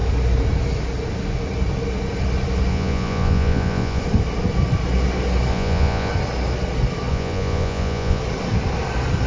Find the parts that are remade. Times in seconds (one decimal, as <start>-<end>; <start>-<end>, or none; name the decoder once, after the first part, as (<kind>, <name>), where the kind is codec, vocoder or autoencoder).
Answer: 2.7-4.0 (vocoder, Vocos); 5.5-6.1; 7.1-8.2